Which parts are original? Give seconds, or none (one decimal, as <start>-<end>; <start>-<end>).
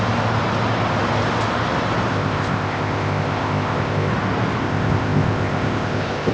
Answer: 0.0-2.1; 4.1-4.6